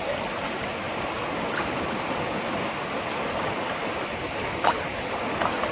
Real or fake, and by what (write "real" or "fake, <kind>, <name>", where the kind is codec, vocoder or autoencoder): real